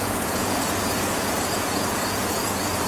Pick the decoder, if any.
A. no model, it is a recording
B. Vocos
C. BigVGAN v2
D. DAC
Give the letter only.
B